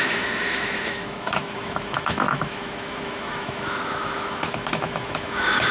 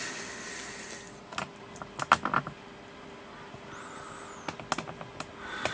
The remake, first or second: first